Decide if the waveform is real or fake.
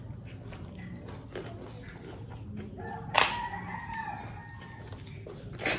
real